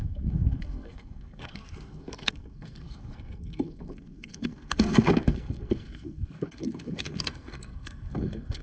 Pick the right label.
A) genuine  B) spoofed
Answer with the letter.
B